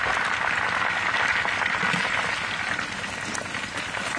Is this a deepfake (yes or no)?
no